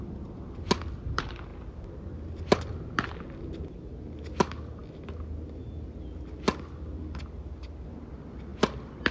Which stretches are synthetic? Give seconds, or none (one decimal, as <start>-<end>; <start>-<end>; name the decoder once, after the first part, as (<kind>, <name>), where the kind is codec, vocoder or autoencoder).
none